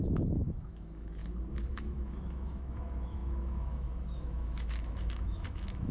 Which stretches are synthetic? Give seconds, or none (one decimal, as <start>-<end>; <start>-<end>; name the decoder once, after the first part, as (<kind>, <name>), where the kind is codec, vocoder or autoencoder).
0.0-1.2 (autoencoder, DAC-VAE); 1.7-5.9